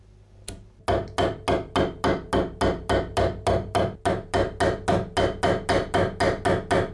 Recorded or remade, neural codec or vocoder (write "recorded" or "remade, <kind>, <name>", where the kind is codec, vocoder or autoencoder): recorded